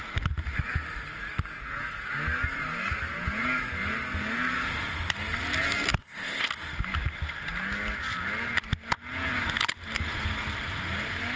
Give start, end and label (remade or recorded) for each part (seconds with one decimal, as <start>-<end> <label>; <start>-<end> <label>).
0.0-6.0 recorded; 6.0-6.5 remade; 6.5-11.4 recorded